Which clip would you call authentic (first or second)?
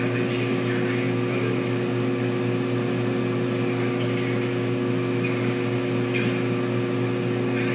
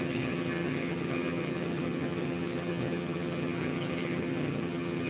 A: first